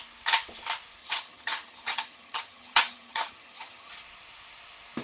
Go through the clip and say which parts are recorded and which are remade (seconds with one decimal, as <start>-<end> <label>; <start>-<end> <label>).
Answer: 0.0-1.0 recorded; 1.0-3.9 remade; 3.9-5.0 recorded